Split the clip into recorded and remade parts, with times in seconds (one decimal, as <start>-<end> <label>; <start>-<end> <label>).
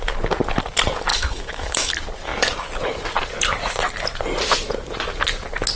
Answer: 0.0-1.1 recorded; 1.1-1.9 remade; 1.9-5.8 recorded